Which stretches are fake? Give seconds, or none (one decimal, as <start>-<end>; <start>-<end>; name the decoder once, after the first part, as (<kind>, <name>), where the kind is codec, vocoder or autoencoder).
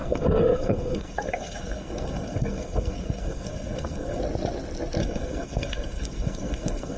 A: 0.0-4.2 (codec, SNAC); 5.0-7.0